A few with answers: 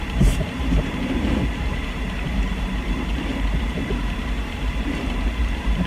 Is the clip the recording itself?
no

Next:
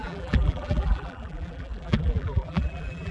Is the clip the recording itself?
no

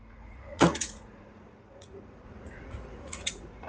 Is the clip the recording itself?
no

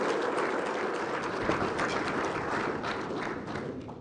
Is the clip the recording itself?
yes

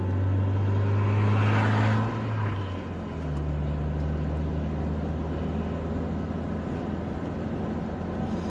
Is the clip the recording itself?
yes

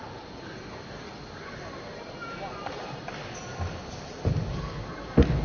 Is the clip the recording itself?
yes